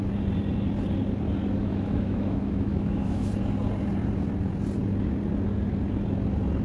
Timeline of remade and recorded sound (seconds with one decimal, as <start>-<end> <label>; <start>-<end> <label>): 0.0-1.6 recorded; 1.6-3.3 remade; 3.3-6.6 recorded